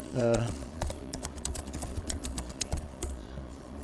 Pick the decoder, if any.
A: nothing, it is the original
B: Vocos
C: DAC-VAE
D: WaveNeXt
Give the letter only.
B